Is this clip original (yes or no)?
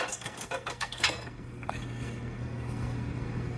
no